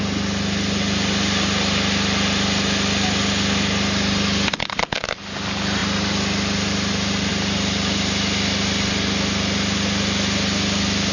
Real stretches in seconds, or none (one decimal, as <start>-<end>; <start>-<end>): 0.0-11.1